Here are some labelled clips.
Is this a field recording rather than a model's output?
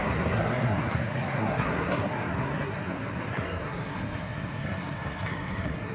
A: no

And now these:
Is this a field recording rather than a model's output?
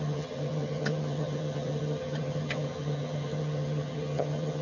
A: no